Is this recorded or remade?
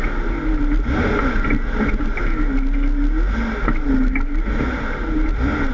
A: recorded